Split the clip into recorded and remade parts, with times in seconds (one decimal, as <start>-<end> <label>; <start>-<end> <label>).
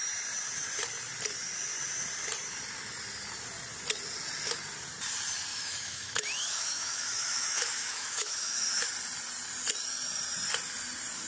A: 0.0-5.5 recorded; 5.5-8.9 remade; 8.9-11.3 recorded